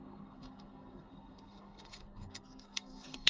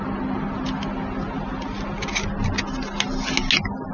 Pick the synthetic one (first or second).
first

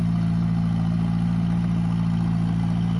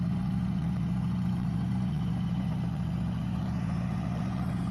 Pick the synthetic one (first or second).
second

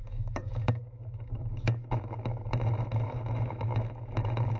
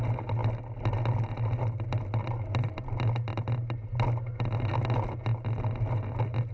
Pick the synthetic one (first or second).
first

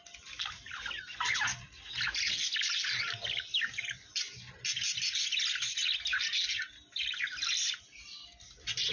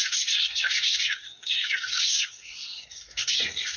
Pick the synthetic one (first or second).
second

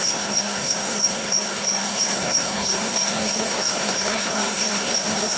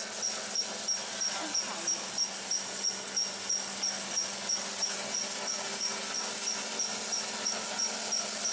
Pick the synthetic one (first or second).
first